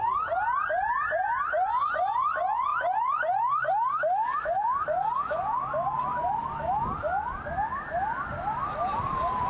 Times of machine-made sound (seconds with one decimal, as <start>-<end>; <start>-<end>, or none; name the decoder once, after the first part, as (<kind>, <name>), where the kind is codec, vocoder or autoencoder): none

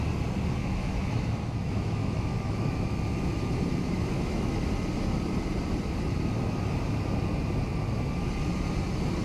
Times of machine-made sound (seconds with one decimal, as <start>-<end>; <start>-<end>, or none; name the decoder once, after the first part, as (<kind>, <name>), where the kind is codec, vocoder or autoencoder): 0.6-3.0 (autoencoder, DAC-VAE); 3.8-4.7

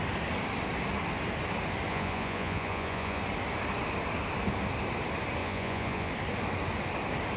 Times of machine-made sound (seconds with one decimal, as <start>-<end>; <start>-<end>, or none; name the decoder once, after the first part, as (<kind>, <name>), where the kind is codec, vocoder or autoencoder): 1.9-3.2 (vocoder, Vocos); 5.4-6.1

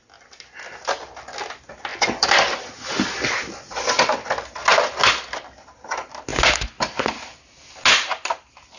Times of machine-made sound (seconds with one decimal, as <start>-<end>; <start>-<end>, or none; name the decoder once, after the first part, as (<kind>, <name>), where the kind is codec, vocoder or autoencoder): none

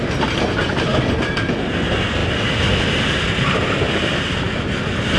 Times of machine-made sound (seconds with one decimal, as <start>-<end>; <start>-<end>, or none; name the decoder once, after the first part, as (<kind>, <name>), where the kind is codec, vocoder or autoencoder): 0.9-1.7 (vocoder, BigVGAN v2); 2.2-3.1